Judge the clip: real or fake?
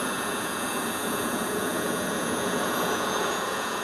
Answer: fake